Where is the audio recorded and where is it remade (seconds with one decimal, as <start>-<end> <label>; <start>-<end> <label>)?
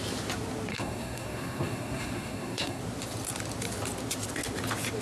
0.0-0.7 recorded; 0.7-2.8 remade; 2.8-5.0 recorded